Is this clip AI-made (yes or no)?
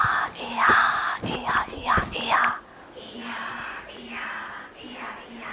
no